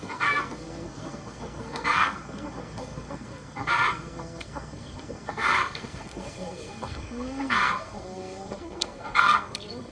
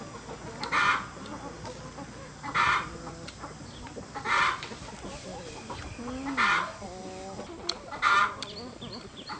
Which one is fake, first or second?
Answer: first